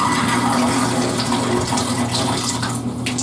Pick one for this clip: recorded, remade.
recorded